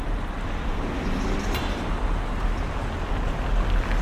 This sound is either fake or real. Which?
real